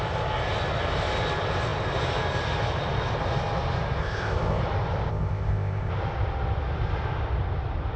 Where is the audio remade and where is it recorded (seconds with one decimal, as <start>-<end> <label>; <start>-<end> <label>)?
0.0-4.0 recorded; 4.0-4.6 remade; 4.6-5.1 recorded; 5.1-5.9 remade; 5.9-8.0 recorded